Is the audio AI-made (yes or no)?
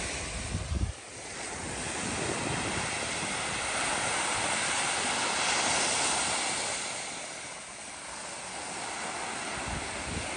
no